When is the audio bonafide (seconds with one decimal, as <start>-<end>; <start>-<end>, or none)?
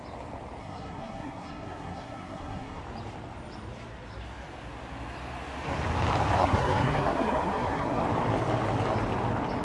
0.0-0.6; 2.8-6.4; 8.0-9.6